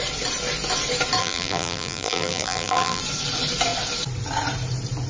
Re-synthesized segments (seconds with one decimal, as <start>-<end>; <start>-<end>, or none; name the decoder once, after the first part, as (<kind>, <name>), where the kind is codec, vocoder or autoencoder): 1.2-3.0 (vocoder, BigVGAN v2)